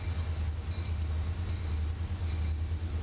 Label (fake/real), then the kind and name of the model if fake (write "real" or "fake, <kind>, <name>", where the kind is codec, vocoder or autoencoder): real